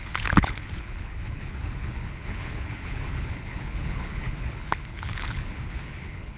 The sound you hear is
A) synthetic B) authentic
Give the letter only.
A